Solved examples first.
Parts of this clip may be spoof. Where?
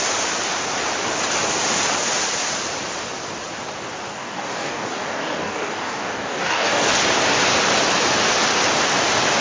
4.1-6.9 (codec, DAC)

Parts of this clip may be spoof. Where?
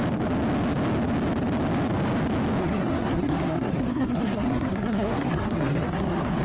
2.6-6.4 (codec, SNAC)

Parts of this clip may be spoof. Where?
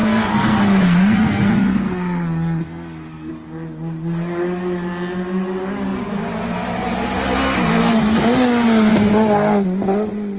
0.0-3.3 (codec, SNAC)